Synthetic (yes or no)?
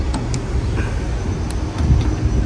no